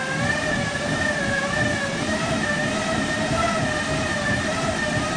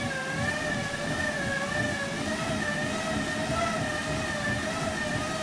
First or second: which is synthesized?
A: first